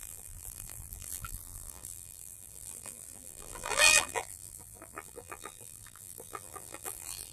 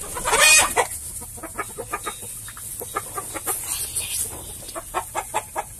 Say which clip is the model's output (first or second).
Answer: first